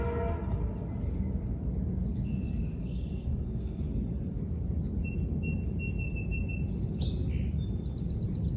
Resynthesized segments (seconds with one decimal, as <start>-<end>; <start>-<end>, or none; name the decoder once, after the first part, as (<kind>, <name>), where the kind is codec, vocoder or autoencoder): 2.8-3.8 (codec, SNAC)